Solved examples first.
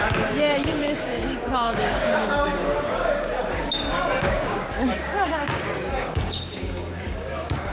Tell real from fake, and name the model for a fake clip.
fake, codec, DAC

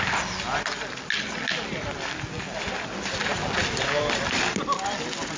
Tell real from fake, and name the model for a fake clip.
real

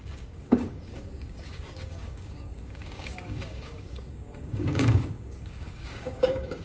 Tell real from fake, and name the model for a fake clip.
fake, codec, DAC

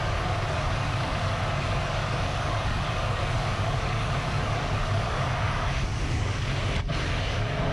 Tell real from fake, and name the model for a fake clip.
fake, codec, DAC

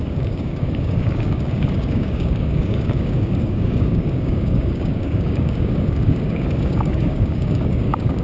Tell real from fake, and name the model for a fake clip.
fake, codec, DAC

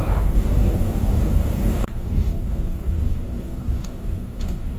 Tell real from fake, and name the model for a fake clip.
fake, codec, DAC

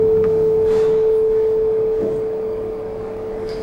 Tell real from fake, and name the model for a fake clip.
fake, codec, DAC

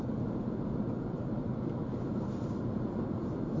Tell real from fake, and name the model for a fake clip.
real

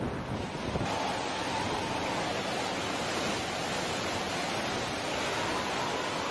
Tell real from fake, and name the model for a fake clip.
real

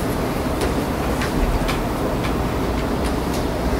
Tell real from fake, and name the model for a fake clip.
real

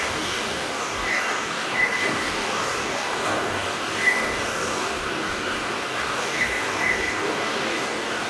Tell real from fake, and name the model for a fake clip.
fake, codec, DAC